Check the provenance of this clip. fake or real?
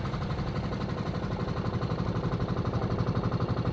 real